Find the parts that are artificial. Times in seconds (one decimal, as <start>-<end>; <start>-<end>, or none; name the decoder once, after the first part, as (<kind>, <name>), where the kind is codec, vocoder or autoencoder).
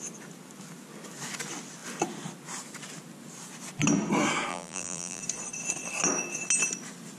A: 4.5-5.2 (vocoder, BigVGAN v2)